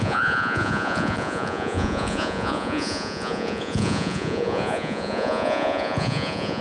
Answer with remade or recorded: remade